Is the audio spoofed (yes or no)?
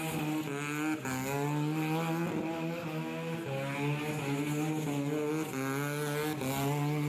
no